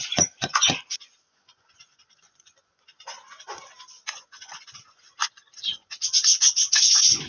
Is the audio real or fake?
fake